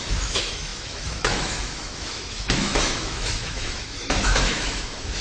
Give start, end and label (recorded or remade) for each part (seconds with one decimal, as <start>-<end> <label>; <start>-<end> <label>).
0.0-5.2 remade